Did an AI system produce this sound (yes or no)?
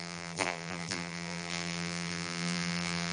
yes